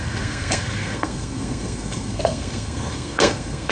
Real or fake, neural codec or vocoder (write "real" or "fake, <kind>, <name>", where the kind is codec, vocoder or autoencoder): fake, codec, SNAC